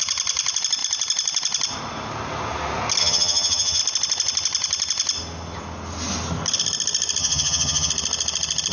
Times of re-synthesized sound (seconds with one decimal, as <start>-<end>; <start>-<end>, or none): 3.0-3.8; 7.2-7.9